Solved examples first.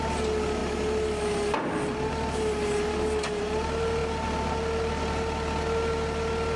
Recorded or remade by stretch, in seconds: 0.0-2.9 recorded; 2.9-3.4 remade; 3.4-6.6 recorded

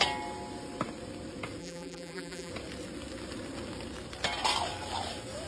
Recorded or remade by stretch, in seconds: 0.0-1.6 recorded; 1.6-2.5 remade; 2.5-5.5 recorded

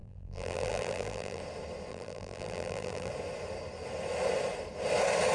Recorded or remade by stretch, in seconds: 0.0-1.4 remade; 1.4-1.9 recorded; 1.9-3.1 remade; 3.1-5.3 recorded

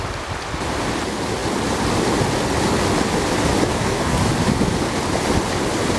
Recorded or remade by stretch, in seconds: 0.0-3.7 recorded; 3.7-4.3 remade; 4.3-6.0 recorded

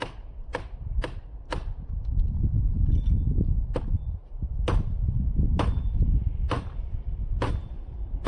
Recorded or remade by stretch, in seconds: 0.0-8.3 recorded

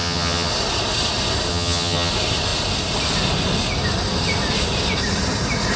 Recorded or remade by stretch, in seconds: 0.0-0.5 remade; 0.5-1.5 recorded; 1.5-2.1 remade; 2.1-5.8 recorded

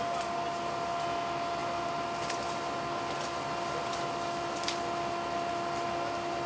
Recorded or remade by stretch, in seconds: 0.0-6.5 recorded

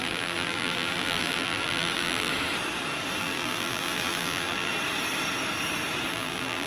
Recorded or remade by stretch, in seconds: 0.0-2.3 remade; 2.3-3.2 recorded; 3.2-4.7 remade; 4.7-6.1 recorded; 6.1-6.7 remade